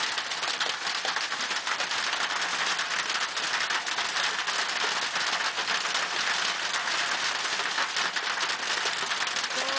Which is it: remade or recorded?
recorded